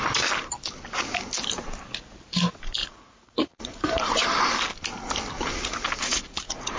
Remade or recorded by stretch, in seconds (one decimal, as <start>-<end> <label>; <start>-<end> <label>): 0.0-2.8 recorded; 2.8-4.2 remade; 4.2-6.0 recorded; 6.0-6.8 remade